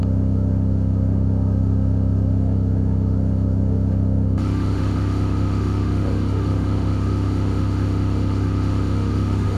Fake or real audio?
fake